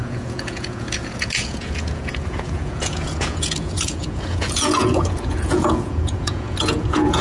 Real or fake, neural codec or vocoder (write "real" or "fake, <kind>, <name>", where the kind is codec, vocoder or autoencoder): fake, vocoder, Vocos